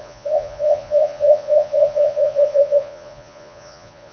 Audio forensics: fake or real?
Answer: fake